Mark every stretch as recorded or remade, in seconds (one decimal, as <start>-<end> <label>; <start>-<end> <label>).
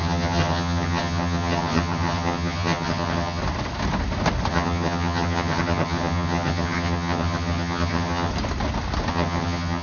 0.0-3.4 remade; 3.4-4.5 recorded; 4.5-8.3 remade; 8.3-9.1 recorded; 9.1-9.8 remade